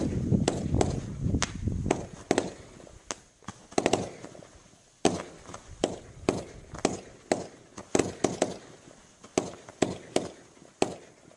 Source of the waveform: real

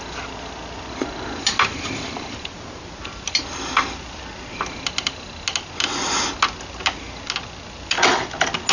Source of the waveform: real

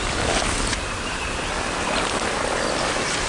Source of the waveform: real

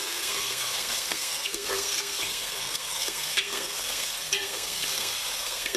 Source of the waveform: fake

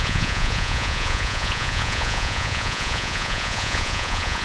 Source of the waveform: fake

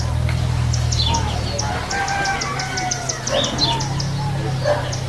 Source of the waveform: real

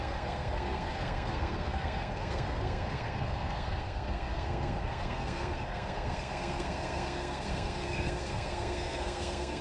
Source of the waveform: fake